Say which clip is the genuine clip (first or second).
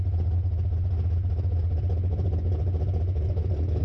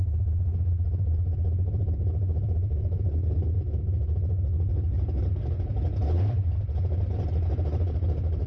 first